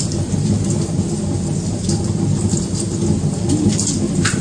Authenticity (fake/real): real